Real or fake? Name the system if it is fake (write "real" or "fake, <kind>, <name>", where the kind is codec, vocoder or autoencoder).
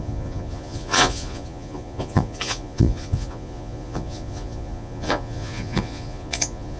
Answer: fake, vocoder, Vocos